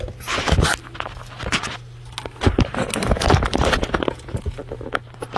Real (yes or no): yes